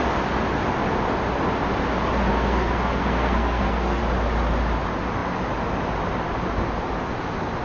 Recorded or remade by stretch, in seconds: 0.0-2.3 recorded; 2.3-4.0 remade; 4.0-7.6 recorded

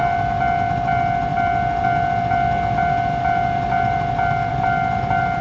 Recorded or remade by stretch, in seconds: 0.0-5.4 recorded

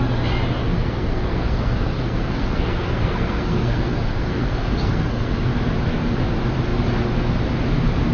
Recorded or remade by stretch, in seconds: 0.0-0.6 recorded; 0.6-5.5 remade; 5.5-8.1 recorded

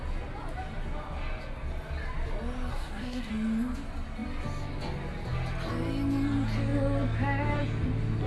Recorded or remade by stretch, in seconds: 0.0-2.7 recorded; 2.7-3.3 remade; 3.3-8.3 recorded

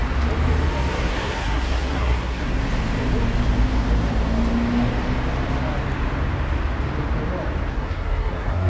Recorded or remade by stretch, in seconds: 0.0-0.9 recorded; 0.9-2.6 remade; 2.6-7.7 recorded; 7.7-8.7 remade

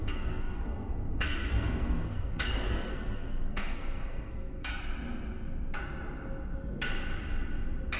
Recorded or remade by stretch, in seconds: 0.0-4.8 remade; 4.8-8.0 recorded

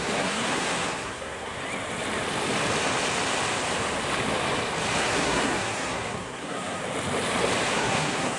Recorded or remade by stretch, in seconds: 0.0-1.6 remade; 1.6-5.0 recorded; 5.0-6.8 remade; 6.8-7.7 recorded; 7.7-8.4 remade

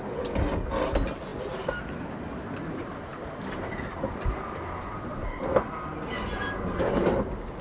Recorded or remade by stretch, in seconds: 0.0-7.6 recorded